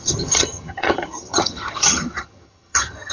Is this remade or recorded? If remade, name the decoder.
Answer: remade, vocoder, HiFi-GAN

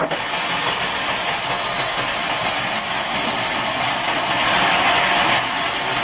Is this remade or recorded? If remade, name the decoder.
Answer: recorded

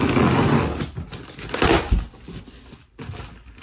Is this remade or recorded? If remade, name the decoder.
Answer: recorded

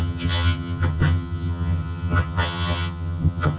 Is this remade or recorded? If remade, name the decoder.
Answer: remade, vocoder, HiFi-GAN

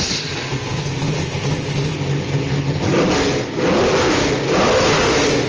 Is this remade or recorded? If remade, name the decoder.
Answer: recorded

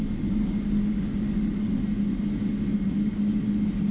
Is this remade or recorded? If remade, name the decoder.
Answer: recorded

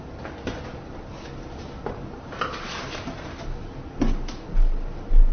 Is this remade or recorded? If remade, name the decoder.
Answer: recorded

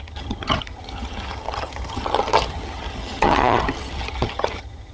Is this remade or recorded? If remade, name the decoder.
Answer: remade, vocoder, HiFi-GAN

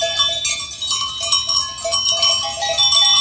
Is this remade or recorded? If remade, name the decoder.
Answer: recorded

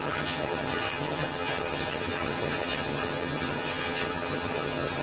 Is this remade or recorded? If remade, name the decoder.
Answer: remade, vocoder, HiFi-GAN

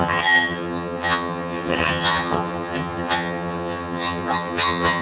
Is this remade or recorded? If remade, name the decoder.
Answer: remade, vocoder, HiFi-GAN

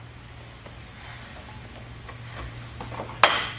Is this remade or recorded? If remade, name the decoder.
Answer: recorded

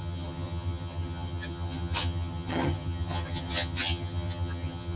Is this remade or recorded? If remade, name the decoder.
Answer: remade, vocoder, HiFi-GAN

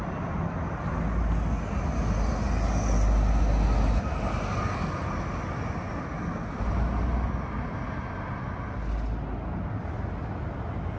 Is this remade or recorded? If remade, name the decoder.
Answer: recorded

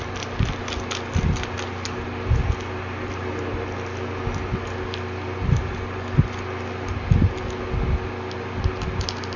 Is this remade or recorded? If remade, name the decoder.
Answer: recorded